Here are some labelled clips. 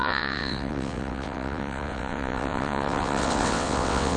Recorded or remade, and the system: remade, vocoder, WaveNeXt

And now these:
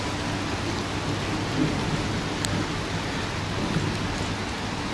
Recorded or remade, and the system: recorded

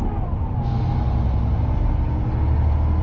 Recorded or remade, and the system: recorded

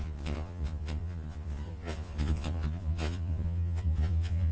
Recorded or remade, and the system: remade, vocoder, Vocos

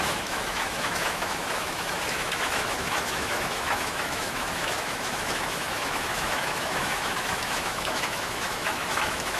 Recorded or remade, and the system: remade, autoencoder, DAC-VAE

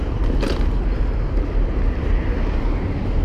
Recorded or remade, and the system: recorded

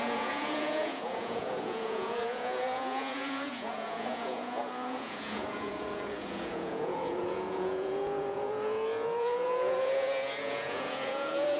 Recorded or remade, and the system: remade, vocoder, Vocos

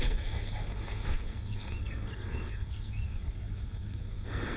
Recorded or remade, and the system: remade, codec, SNAC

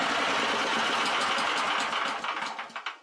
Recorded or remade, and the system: recorded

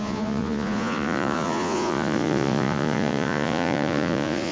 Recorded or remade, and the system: remade, vocoder, Vocos